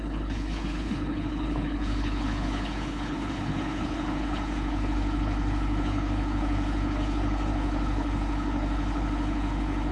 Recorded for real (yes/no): no